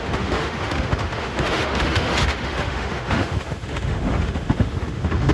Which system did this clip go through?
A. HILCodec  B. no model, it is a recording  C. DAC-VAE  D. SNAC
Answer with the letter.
C